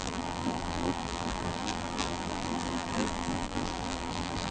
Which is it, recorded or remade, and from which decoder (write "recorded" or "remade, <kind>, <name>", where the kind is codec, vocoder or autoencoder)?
remade, vocoder, BigVGAN v2